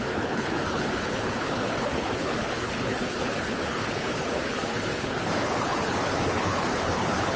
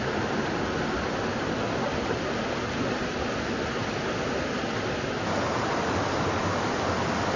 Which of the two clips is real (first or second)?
second